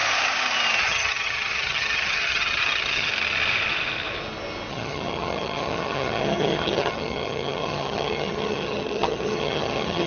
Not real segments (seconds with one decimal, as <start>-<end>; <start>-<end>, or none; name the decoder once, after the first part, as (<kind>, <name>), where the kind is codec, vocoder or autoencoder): 0.8-3.1 (vocoder, HiFi-GAN); 4.7-10.1